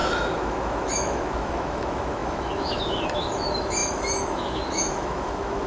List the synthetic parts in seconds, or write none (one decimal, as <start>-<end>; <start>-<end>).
0.0-5.7